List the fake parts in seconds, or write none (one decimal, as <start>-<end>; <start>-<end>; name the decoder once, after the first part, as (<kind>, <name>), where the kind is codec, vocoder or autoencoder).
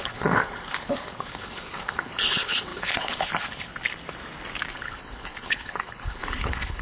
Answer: 0.0-3.7 (codec, HILCodec); 4.7-6.8